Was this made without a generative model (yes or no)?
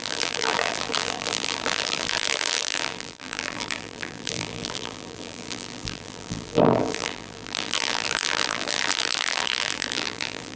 no